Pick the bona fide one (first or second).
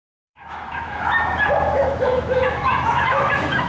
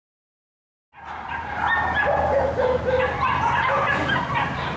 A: second